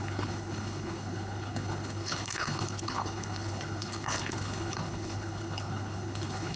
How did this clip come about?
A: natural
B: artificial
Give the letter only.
B